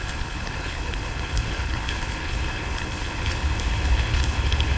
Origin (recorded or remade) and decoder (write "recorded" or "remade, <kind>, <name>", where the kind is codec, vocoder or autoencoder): remade, codec, HILCodec